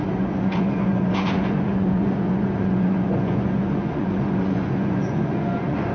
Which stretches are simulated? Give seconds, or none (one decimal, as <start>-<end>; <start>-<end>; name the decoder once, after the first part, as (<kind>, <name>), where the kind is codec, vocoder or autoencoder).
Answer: 0.0-5.9 (vocoder, Vocos)